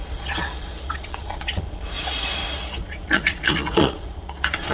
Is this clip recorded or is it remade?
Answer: remade